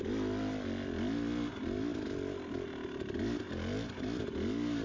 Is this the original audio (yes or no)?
yes